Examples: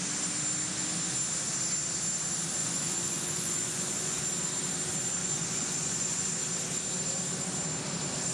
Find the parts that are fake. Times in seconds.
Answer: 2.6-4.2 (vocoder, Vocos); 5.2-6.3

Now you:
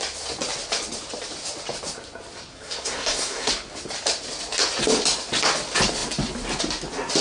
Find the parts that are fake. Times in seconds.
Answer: 2.5-3.5 (codec, SNAC)

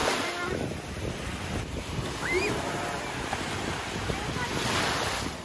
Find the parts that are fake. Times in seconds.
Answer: none

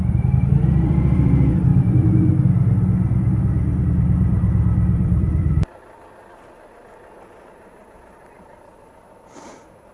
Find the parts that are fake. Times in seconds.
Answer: 0.0-1.7 (vocoder, BigVGAN v2); 3.8-9.9

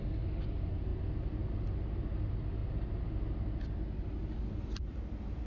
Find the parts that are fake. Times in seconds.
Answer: none